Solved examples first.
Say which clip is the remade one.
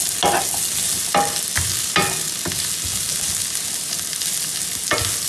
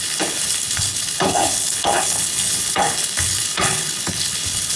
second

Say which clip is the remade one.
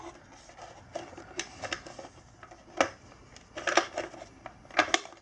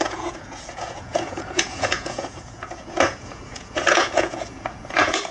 second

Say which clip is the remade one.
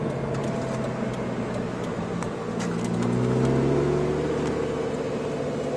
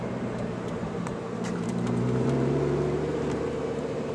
second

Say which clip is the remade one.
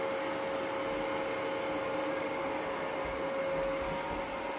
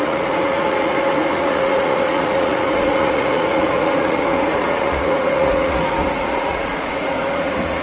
second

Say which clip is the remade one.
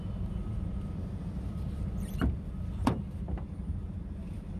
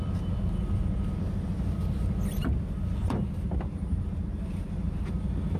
first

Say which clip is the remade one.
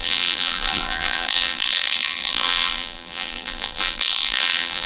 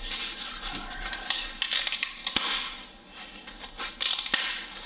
first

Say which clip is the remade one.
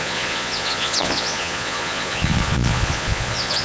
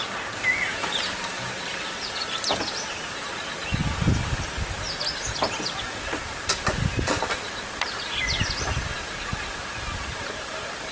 first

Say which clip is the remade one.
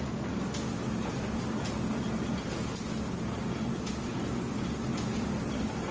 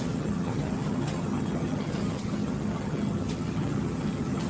second